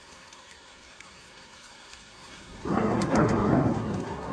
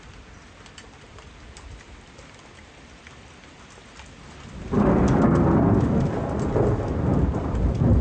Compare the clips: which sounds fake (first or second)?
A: first